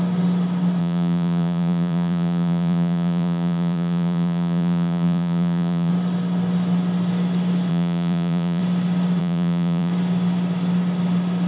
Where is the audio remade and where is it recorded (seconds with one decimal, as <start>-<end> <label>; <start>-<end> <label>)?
0.0-0.8 recorded; 0.8-5.9 remade; 5.9-7.7 recorded; 7.7-8.6 remade; 8.6-9.2 recorded; 9.2-9.9 remade; 9.9-11.5 recorded